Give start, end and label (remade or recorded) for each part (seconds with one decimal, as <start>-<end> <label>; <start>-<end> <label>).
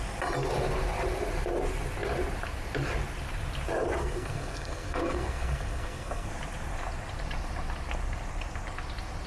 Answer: 0.0-4.0 recorded; 4.0-6.3 remade; 6.3-9.3 recorded